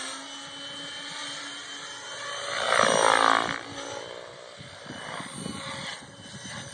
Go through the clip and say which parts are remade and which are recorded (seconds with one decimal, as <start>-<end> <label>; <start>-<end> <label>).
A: 0.0-5.8 recorded; 5.8-6.7 remade